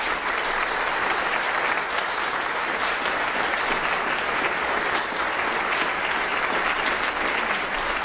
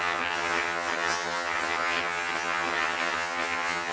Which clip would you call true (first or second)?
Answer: first